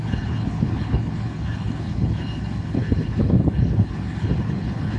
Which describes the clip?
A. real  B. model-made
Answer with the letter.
B